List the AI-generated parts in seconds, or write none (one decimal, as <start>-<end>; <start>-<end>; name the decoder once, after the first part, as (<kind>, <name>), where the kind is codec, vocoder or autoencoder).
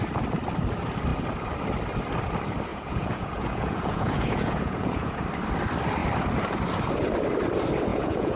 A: 2.7-5.2 (vocoder, Vocos); 7.9-8.4